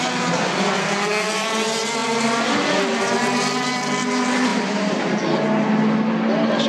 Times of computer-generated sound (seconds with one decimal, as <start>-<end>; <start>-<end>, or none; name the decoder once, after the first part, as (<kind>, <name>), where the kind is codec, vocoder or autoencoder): 0.8-1.3 (codec, SNAC)